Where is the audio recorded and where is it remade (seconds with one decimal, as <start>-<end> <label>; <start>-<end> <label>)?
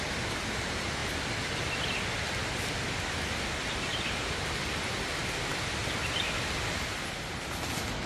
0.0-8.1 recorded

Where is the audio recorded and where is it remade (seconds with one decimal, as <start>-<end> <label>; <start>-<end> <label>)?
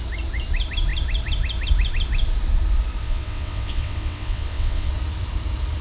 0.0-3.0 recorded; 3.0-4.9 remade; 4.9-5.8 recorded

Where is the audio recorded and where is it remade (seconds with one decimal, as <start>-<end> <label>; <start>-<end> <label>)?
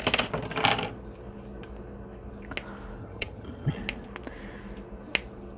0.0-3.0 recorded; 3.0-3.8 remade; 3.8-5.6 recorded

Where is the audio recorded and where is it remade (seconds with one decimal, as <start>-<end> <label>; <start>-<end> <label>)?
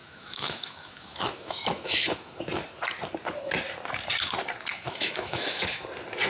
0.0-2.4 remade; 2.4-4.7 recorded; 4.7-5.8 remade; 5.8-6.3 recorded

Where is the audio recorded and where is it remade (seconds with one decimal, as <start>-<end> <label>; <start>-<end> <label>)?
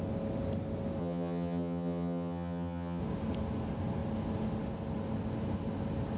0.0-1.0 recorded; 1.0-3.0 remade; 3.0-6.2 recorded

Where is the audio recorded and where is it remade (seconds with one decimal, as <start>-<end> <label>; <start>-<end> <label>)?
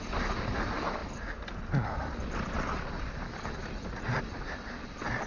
0.0-5.3 recorded